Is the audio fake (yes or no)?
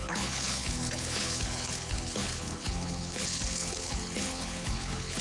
yes